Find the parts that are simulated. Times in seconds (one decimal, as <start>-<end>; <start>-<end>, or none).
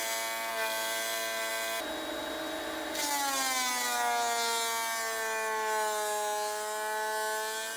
none